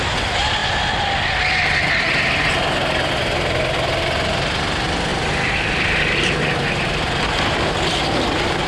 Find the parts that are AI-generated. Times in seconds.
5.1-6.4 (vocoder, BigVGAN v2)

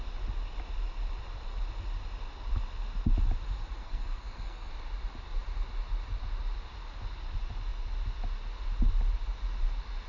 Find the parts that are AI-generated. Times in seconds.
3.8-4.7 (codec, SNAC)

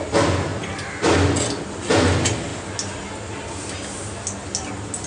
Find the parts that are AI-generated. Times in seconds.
none